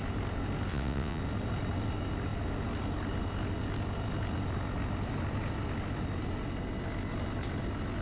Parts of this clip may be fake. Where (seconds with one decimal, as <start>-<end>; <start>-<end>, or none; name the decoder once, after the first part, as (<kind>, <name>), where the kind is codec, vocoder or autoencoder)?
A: 0.7-1.2 (vocoder, WaveNeXt)